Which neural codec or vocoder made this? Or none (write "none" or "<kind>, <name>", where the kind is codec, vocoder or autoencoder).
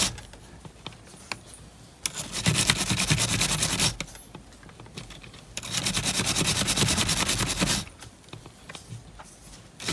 none